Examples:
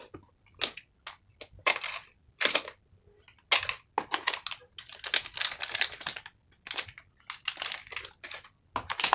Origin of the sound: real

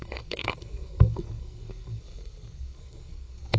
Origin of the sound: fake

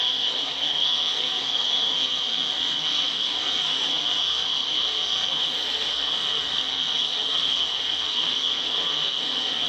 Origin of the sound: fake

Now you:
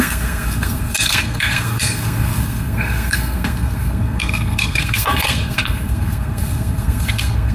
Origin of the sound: fake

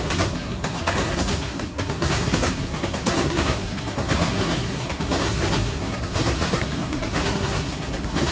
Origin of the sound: fake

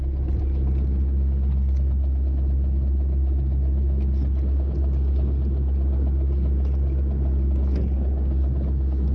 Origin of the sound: real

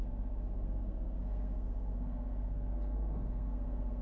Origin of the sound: fake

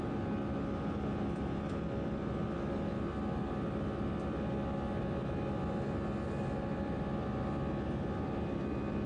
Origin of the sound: real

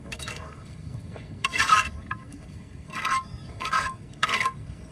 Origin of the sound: fake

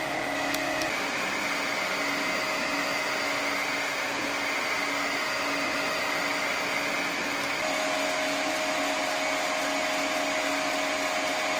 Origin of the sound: real